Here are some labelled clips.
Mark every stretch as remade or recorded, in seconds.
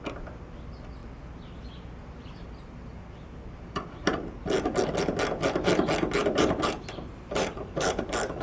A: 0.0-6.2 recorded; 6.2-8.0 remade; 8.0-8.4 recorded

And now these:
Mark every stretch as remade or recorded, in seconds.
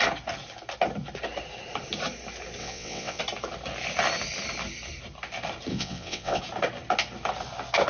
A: 0.0-2.6 recorded; 2.6-3.2 remade; 3.2-5.7 recorded; 5.7-6.4 remade; 6.4-7.9 recorded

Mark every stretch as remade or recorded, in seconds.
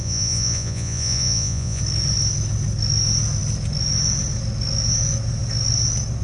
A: 0.0-1.8 remade; 1.8-6.2 recorded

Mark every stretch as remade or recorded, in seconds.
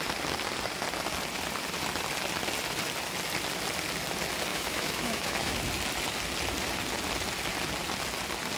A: 0.0-4.5 recorded; 4.5-5.6 remade; 5.6-8.6 recorded